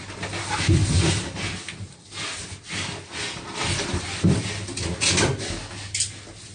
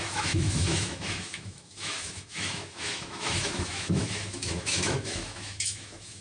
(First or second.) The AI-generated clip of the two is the second